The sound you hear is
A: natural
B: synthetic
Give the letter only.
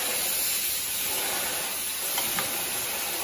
A